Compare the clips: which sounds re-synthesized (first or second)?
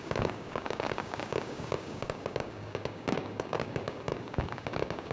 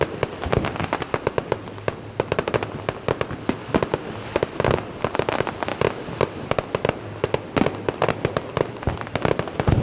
first